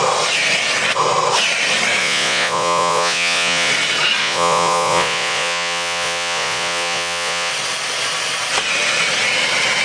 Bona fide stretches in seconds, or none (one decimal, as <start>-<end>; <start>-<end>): 0.0-2.0; 3.7-4.2; 7.5-9.8

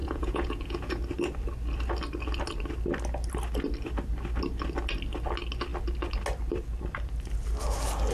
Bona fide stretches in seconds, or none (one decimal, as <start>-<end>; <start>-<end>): 1.0-8.1

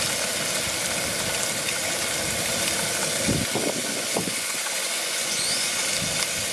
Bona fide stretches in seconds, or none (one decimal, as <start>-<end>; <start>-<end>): 0.0-3.8; 5.8-6.5

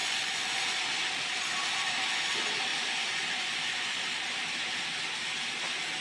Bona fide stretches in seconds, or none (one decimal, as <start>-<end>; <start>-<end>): 0.6-2.7; 4.0-6.0

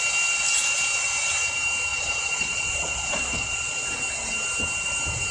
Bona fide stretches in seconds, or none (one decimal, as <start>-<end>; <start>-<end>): 0.0-1.9; 3.8-5.3

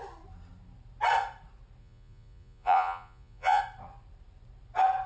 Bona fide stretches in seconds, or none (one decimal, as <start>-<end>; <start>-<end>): 0.0-1.8; 3.6-5.1

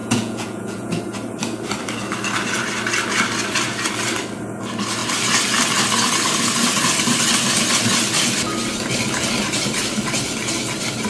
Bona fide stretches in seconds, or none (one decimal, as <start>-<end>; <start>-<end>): 1.0-11.1